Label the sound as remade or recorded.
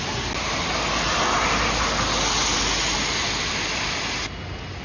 recorded